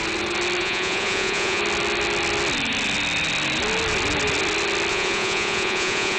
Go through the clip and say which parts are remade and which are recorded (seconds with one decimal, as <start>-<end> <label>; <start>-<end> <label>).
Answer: 0.0-0.6 recorded; 0.6-1.6 remade; 1.6-4.9 recorded; 4.9-6.2 remade